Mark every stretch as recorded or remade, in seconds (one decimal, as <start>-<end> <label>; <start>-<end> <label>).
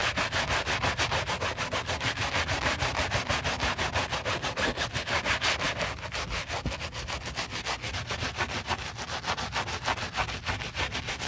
0.0-11.3 recorded